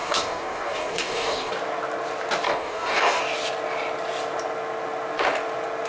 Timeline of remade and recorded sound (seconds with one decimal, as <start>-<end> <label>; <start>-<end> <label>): 0.0-1.5 remade; 1.5-2.5 recorded; 2.5-3.2 remade; 3.2-5.9 recorded

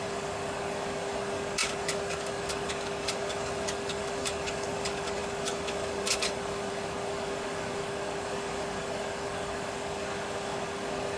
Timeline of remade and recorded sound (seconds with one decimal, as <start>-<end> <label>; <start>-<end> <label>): 0.0-11.2 remade

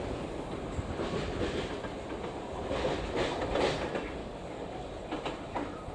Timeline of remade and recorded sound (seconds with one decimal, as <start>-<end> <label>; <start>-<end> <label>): 0.0-4.2 recorded; 4.2-4.9 remade; 4.9-5.9 recorded

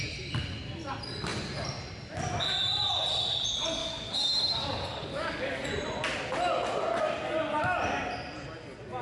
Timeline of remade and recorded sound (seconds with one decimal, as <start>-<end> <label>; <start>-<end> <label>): 0.0-3.8 recorded; 3.8-5.7 remade; 5.7-9.0 recorded

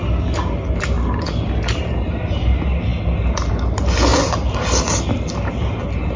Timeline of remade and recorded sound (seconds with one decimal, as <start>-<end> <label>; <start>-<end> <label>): 0.0-6.2 recorded